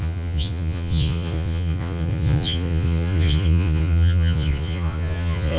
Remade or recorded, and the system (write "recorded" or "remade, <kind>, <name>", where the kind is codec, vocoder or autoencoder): remade, vocoder, Vocos